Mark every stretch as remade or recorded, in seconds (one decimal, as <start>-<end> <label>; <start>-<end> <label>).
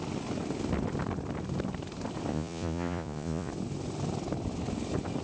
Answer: 0.0-2.3 recorded; 2.3-3.5 remade; 3.5-5.2 recorded